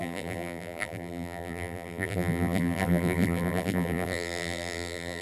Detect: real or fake fake